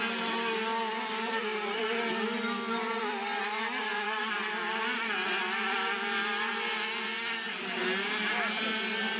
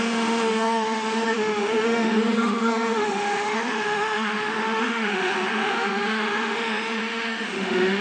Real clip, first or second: first